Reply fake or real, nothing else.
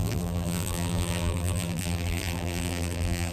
fake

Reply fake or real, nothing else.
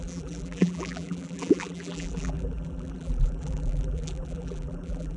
fake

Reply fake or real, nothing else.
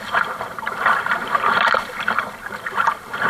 fake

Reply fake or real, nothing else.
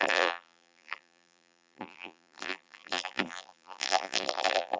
fake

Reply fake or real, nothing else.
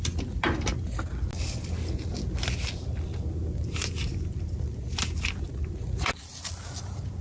real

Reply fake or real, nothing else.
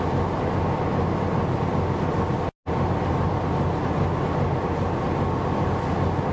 real